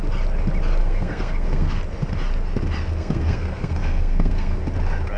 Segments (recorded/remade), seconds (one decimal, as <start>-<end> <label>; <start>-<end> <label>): 0.0-0.8 recorded; 0.8-1.8 remade; 1.8-3.0 recorded; 3.0-4.6 remade; 4.6-5.2 recorded